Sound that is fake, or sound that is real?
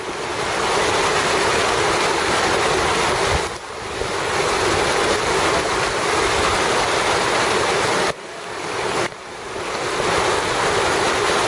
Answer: real